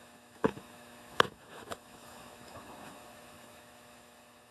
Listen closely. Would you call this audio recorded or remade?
remade